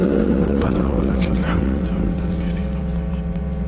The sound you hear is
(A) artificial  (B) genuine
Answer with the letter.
A